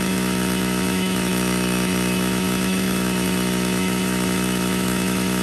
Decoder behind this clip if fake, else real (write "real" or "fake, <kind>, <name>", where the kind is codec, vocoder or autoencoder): fake, autoencoder, DAC-VAE